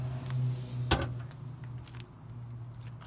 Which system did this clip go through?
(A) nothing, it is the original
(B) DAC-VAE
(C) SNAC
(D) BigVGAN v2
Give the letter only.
A